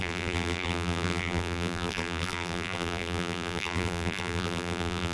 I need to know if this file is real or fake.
fake